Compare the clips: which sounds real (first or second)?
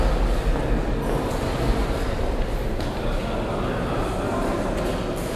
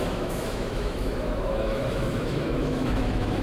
first